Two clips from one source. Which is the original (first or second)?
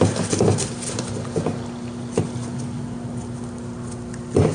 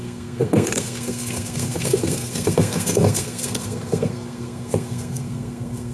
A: first